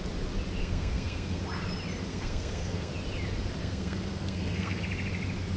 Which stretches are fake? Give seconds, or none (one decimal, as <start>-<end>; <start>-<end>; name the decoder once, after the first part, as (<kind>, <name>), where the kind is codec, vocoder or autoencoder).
0.6-1.4 (codec, SNAC); 2.1-2.9; 3.6-4.8